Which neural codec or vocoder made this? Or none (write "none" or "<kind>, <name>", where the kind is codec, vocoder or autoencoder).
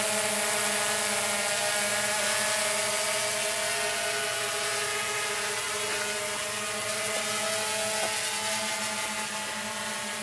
none